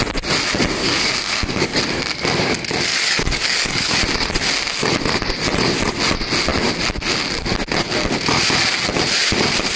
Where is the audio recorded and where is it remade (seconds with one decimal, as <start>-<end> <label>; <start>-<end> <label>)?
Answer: 0.0-0.8 recorded; 0.8-1.8 remade; 1.8-2.9 recorded; 2.9-3.9 remade; 3.9-9.8 recorded

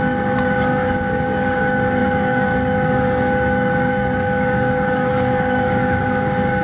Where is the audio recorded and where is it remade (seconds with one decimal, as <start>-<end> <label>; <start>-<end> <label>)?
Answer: 0.0-6.6 remade

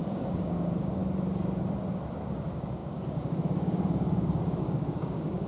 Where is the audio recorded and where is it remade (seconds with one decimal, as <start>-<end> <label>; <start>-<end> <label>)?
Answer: 0.0-1.0 remade; 1.0-2.3 recorded; 2.3-5.5 remade

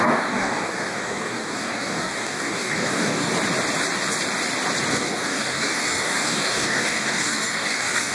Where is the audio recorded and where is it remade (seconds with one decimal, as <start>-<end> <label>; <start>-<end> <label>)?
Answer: 0.0-3.3 remade; 3.3-4.9 recorded; 4.9-8.1 remade

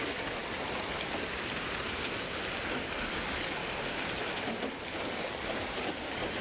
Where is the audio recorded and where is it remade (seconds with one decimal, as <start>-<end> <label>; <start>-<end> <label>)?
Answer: 0.0-0.4 remade; 0.4-2.8 recorded; 2.8-3.6 remade; 3.6-5.0 recorded; 5.0-6.4 remade

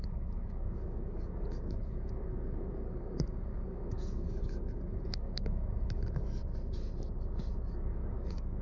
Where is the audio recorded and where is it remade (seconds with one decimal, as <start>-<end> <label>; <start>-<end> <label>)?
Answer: 0.0-6.4 remade; 6.4-7.7 recorded; 7.7-8.6 remade

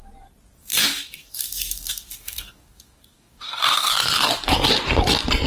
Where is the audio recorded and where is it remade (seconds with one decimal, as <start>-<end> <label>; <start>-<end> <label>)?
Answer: 0.0-0.6 recorded; 0.6-3.9 remade; 3.9-5.5 recorded